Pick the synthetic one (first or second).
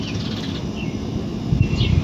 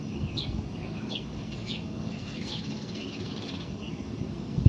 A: second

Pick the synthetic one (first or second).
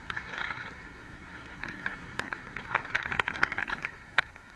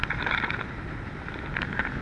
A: first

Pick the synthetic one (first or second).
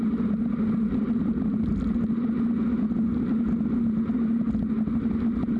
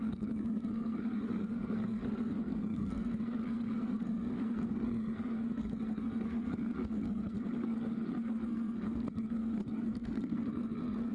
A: second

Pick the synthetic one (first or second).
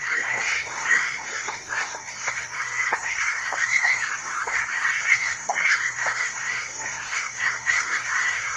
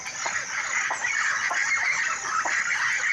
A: first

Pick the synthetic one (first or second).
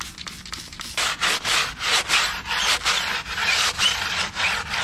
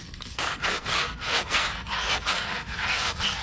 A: second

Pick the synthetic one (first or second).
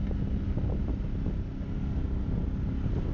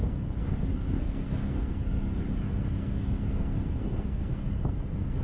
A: second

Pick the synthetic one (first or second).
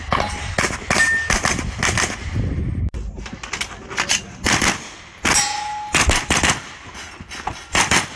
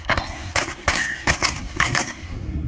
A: second